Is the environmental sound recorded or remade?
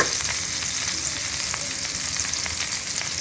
recorded